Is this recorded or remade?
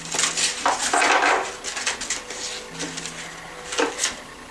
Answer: recorded